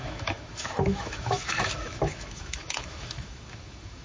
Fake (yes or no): yes